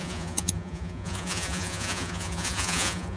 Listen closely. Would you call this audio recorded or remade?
remade